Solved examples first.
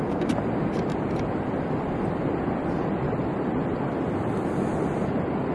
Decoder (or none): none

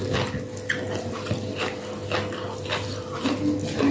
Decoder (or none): none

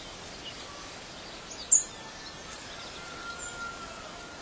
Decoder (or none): none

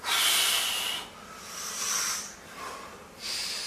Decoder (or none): none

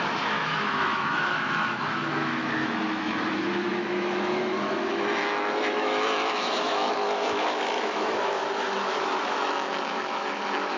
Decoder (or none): autoencoder, DAC-VAE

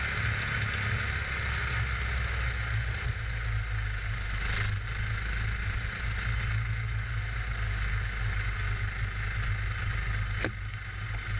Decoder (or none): none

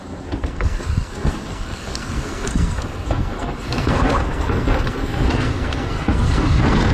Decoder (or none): codec, SNAC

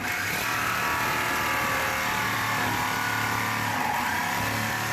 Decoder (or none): none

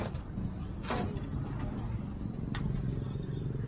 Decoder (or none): none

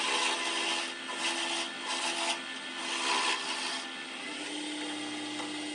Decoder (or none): none